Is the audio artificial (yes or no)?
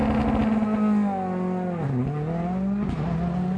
no